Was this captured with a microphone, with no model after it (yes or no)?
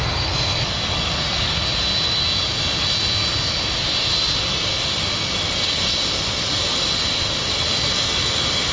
yes